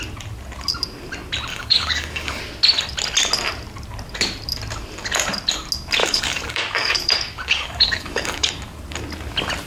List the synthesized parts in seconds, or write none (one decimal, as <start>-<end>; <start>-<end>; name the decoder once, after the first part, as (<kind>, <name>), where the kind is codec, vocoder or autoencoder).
1.5-2.4 (codec, DAC); 6.0-8.5